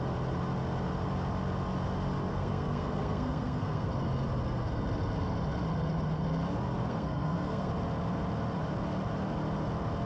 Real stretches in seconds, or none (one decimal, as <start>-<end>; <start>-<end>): 0.0-2.3; 3.9-6.8; 7.7-10.1